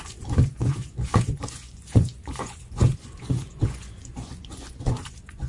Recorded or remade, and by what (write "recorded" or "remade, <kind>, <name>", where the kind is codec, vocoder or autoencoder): remade, vocoder, Vocos